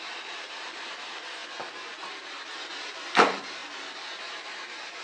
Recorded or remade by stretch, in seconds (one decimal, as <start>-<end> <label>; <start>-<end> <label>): 0.0-1.4 remade; 1.4-2.3 recorded; 2.3-5.0 remade